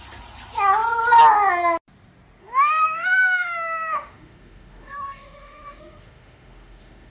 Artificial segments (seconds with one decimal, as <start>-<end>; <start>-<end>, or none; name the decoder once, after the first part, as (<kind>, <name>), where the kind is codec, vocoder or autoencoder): 2.4-7.1 (autoencoder, DAC-VAE)